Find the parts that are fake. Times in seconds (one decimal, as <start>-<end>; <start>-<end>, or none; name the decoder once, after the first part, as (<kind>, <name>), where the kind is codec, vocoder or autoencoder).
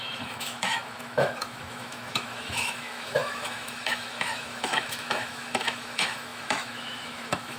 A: 0.0-7.6 (autoencoder, DAC-VAE)